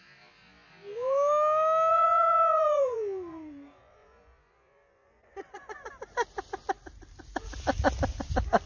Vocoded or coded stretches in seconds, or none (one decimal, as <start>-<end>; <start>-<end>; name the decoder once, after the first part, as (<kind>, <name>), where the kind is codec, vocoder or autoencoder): 1.9-5.9 (vocoder, Vocos)